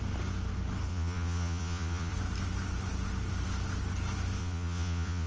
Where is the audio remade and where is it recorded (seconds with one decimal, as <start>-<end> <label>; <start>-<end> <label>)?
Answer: 0.0-0.9 recorded; 0.9-2.1 remade; 2.1-4.4 recorded; 4.4-5.3 remade